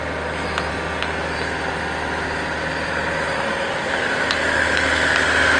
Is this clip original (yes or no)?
yes